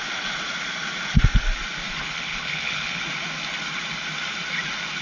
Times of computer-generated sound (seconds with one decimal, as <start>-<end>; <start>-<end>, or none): 1.9-3.0